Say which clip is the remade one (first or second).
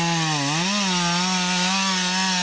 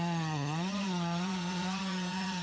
second